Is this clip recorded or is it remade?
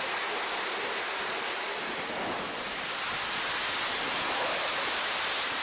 recorded